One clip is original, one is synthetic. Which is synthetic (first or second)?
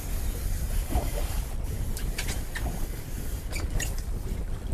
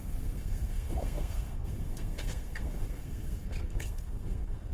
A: second